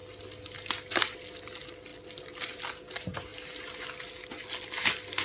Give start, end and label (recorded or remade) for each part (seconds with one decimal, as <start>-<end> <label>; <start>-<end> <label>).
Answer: 0.0-5.2 recorded